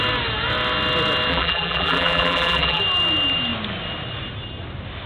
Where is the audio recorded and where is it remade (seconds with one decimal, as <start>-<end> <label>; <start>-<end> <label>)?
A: 0.0-1.3 recorded; 1.3-2.8 remade; 2.8-5.1 recorded